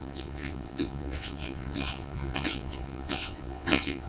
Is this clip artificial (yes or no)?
yes